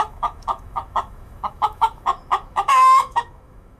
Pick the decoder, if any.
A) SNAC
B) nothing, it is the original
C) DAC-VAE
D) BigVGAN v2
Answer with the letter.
C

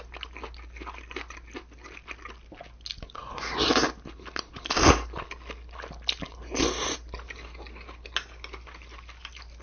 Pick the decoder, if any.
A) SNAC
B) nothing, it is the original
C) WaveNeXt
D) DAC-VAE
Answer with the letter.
B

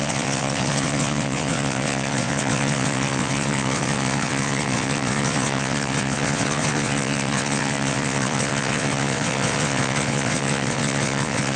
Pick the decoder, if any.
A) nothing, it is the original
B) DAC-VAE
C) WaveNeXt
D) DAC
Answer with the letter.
C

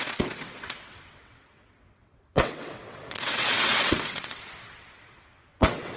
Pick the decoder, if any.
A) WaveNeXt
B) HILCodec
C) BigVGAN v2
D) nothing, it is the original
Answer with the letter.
A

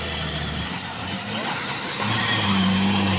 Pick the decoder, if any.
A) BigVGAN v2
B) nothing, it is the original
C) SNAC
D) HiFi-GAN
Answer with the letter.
A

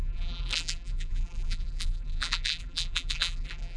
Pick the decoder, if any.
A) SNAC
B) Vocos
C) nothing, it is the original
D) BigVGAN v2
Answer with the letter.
D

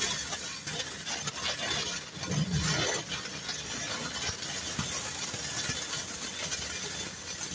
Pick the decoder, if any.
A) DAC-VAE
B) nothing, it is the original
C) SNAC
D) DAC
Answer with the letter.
B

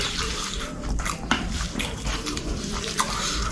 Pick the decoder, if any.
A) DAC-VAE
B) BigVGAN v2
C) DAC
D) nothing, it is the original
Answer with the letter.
B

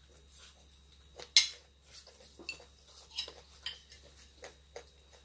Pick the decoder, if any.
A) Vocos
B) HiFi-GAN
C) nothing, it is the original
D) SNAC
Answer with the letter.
C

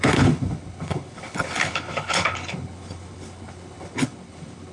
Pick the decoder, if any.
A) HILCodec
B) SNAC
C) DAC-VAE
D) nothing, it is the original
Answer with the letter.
A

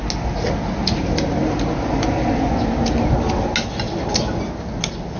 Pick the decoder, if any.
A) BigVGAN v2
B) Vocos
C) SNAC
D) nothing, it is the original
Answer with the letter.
D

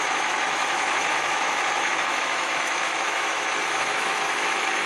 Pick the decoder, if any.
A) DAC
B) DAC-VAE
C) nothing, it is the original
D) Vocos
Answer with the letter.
B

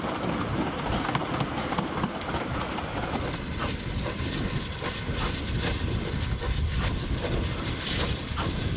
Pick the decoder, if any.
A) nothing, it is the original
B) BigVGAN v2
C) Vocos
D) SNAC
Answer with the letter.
A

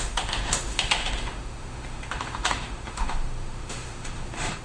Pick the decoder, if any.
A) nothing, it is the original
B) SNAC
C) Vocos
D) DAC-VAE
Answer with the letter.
D